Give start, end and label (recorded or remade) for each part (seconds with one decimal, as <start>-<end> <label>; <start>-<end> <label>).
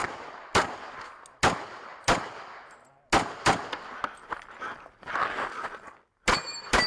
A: 0.0-6.9 recorded